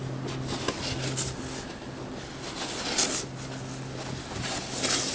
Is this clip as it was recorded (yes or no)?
yes